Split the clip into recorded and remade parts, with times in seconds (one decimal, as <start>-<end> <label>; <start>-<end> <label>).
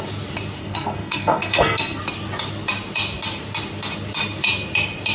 0.0-0.6 recorded; 0.6-2.0 remade; 2.0-5.1 recorded